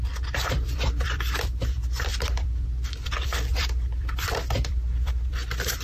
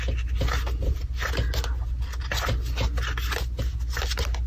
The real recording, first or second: second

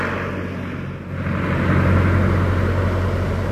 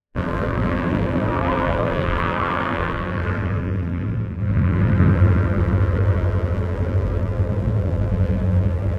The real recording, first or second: first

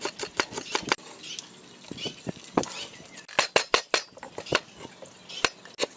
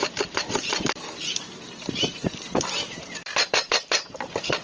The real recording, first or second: first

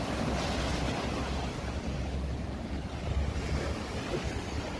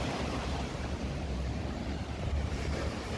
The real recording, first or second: first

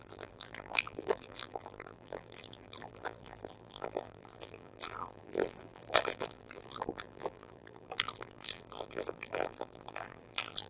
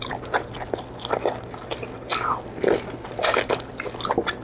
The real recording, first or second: second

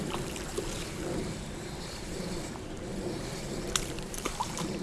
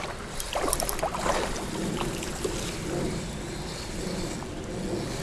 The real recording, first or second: second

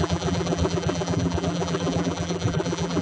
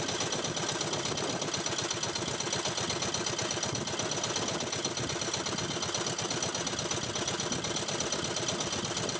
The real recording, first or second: second